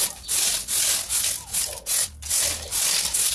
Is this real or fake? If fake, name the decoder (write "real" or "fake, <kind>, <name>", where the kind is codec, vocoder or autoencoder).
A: real